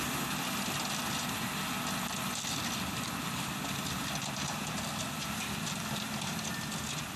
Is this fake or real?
fake